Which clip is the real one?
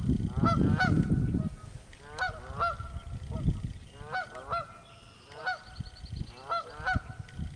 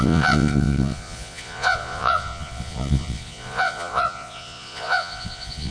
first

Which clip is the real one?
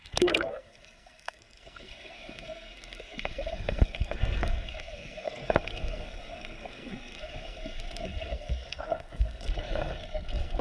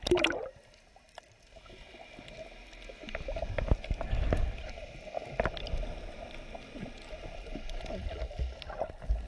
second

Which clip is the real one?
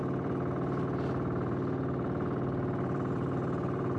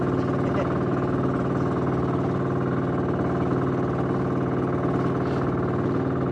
second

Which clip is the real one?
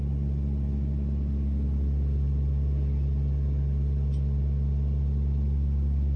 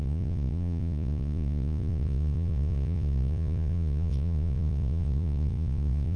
first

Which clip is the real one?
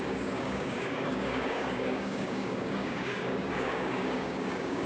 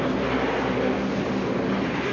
second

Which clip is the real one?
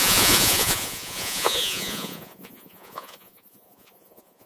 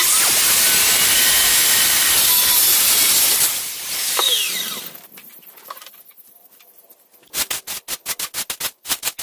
second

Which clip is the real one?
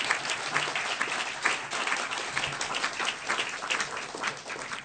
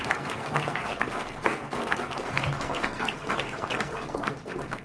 first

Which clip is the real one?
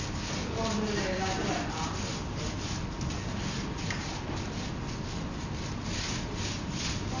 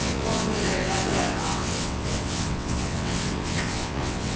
first